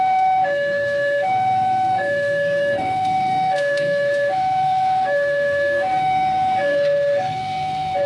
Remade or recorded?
remade